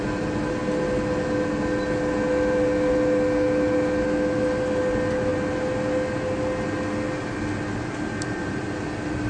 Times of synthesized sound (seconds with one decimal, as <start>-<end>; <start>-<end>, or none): none